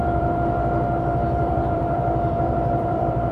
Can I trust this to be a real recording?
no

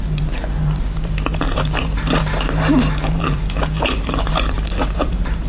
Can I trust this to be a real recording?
no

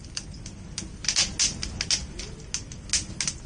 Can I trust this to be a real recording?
yes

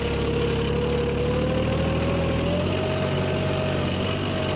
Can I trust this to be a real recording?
yes